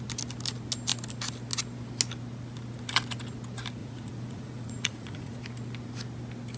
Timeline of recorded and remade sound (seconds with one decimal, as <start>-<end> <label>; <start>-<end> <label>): 0.0-3.8 recorded; 3.8-5.3 remade; 5.3-6.6 recorded